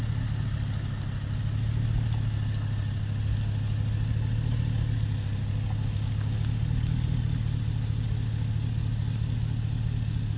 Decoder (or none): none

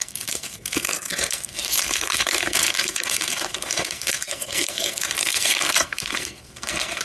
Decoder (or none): codec, SNAC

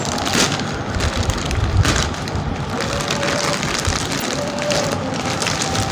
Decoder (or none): vocoder, BigVGAN v2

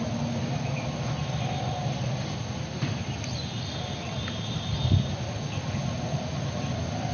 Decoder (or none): none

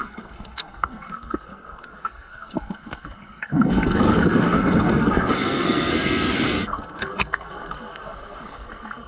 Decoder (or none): codec, SNAC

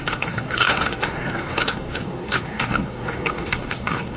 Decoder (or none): codec, SNAC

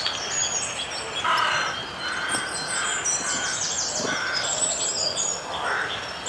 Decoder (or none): none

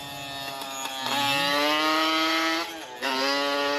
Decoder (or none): none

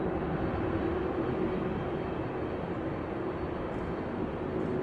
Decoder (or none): none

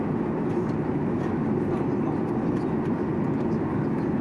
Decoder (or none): none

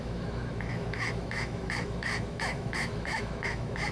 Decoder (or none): autoencoder, DAC-VAE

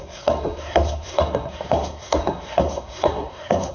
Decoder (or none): codec, SNAC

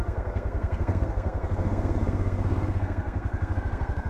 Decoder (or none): codec, SNAC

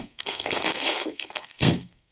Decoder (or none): codec, SNAC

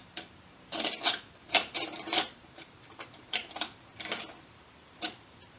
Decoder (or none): vocoder, BigVGAN v2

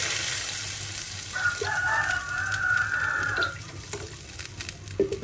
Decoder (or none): none